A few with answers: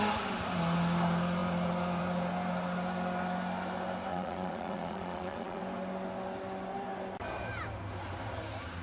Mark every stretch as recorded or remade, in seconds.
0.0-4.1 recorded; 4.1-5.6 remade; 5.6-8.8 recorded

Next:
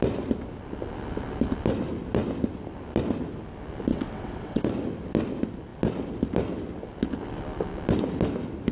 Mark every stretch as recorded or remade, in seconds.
0.0-3.9 recorded; 3.9-4.7 remade; 4.7-8.7 recorded

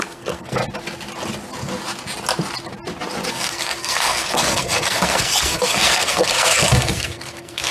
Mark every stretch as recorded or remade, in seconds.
0.0-0.6 remade; 0.6-3.3 recorded; 3.3-7.7 remade

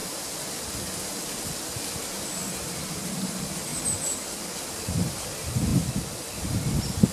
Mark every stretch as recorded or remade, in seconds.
0.0-0.7 remade; 0.7-5.7 recorded; 5.7-6.3 remade; 6.3-7.1 recorded

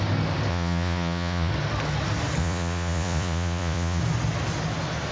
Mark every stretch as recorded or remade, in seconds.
0.0-0.5 recorded; 0.5-1.5 remade; 1.5-2.4 recorded; 2.4-4.0 remade; 4.0-5.1 recorded